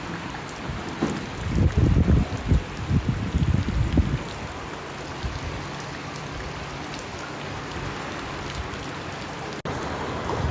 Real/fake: real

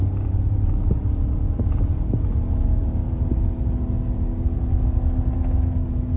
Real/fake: real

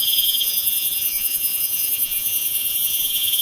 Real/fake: fake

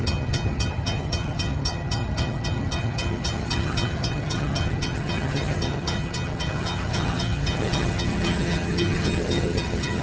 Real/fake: fake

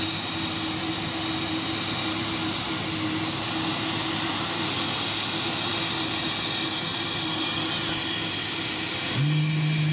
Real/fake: real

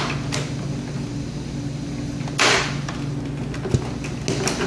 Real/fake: real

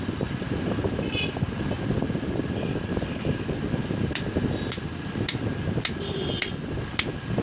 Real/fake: real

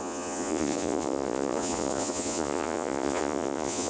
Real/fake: fake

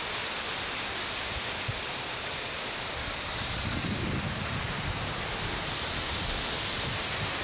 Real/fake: real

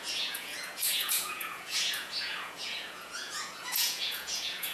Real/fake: fake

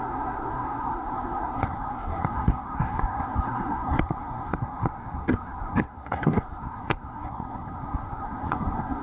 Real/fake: fake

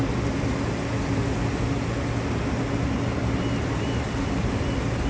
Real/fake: real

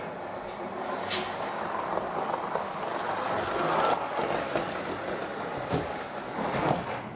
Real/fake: real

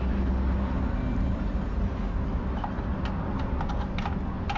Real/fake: real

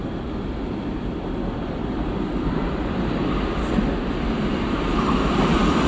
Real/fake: real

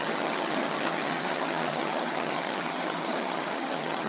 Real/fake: fake